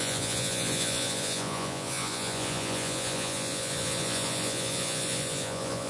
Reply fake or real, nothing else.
fake